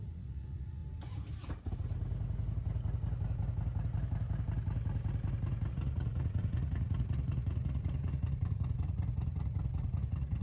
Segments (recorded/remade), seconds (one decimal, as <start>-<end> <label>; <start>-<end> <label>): 0.0-0.8 remade; 0.8-5.7 recorded; 5.7-10.4 remade